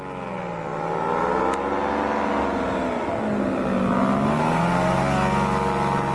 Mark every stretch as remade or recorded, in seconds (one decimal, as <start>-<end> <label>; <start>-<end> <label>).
0.0-6.1 recorded